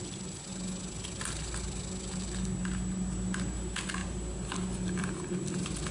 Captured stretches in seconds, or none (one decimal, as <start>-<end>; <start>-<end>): 0.0-4.0